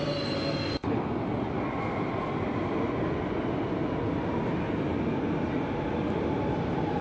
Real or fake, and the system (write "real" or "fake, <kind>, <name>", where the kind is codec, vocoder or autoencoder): real